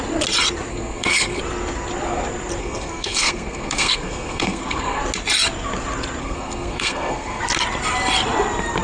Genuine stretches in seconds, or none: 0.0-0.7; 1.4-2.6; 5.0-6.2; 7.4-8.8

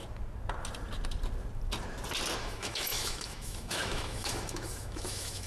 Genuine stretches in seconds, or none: 0.0-2.4

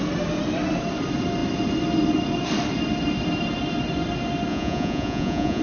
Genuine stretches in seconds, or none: 0.0-4.5

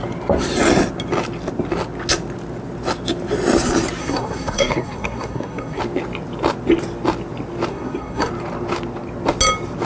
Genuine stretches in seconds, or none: 0.0-4.0; 5.8-7.7; 8.3-9.9

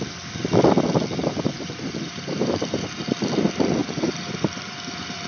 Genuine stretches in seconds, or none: 0.0-1.2; 3.1-3.8

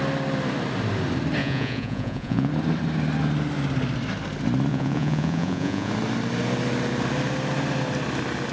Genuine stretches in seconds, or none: 0.0-1.4; 2.5-4.7; 5.9-8.5

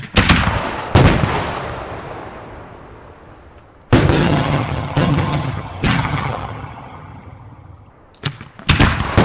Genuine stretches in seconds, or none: 0.0-4.1; 7.9-9.2

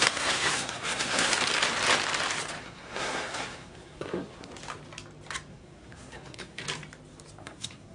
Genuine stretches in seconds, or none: 1.3-2.6; 4.5-5.5; 6.6-7.4